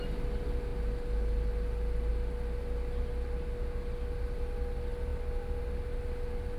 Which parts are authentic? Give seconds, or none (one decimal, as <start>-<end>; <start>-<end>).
0.0-6.6